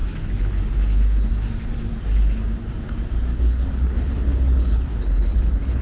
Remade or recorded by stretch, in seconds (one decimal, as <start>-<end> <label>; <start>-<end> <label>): 0.0-1.3 remade; 1.3-3.3 recorded; 3.3-5.8 remade